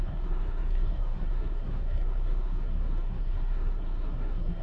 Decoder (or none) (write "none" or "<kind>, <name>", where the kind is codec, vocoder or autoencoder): codec, SNAC